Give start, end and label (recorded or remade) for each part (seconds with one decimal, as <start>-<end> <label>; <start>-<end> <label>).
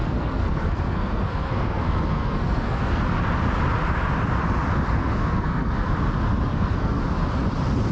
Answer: 0.0-3.0 remade; 3.0-5.0 recorded; 5.0-5.9 remade; 5.9-6.5 recorded; 6.5-7.0 remade; 7.0-7.9 recorded